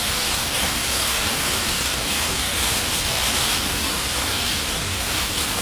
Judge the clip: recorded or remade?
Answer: remade